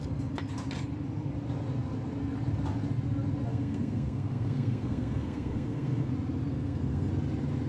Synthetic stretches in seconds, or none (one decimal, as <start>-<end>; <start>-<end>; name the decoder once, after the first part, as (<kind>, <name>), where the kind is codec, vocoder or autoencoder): 3.5-6.1 (codec, SNAC); 6.5-7.1